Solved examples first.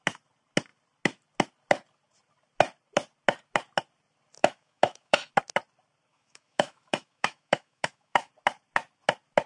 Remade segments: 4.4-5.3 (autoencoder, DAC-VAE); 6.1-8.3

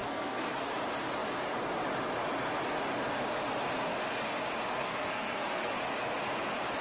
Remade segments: 0.0-0.7 (codec, SNAC); 4.7-5.7

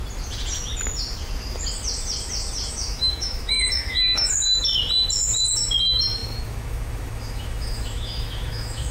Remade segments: 2.7-4.7 (autoencoder, DAC-VAE); 5.8-8.9

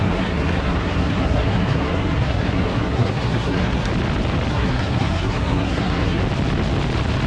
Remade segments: 0.0-3.9 (codec, SNAC); 4.5-6.2